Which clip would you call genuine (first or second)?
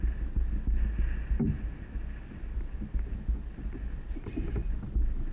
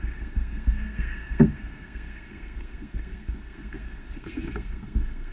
first